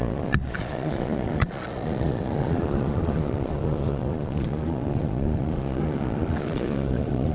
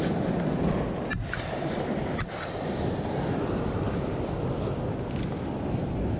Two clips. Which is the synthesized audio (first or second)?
first